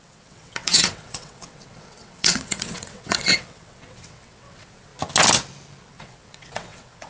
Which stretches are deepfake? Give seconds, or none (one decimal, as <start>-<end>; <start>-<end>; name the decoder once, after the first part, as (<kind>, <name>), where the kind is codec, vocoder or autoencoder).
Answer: 0.0-4.9 (vocoder, WaveNeXt); 5.9-7.1